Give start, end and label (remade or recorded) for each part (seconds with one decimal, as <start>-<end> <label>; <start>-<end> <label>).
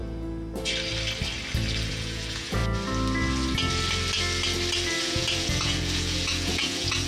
0.0-1.9 recorded; 1.9-2.6 remade; 2.6-5.0 recorded; 5.0-7.1 remade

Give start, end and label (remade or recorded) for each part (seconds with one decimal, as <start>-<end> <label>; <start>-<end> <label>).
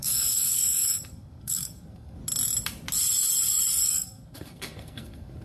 0.0-2.2 remade; 2.2-3.8 recorded; 3.8-5.4 remade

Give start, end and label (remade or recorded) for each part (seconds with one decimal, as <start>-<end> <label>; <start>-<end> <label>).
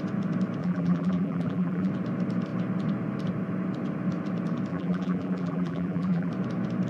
0.0-0.6 recorded; 0.6-1.9 remade; 1.9-4.7 recorded; 4.7-6.3 remade; 6.3-6.9 recorded